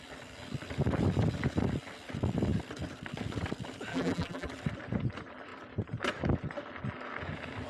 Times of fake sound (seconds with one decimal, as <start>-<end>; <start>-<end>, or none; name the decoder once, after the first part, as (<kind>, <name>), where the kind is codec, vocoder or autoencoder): 3.9-4.5 (vocoder, BigVGAN v2)